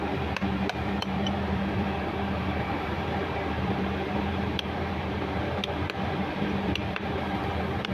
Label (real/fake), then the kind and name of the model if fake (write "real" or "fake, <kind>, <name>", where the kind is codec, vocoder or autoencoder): fake, vocoder, BigVGAN v2